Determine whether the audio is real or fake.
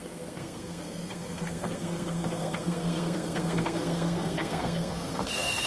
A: fake